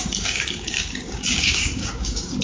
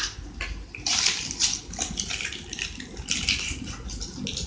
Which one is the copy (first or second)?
first